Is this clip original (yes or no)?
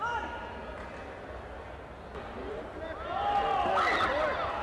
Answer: yes